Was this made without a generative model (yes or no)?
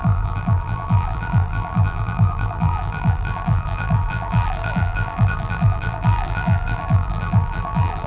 no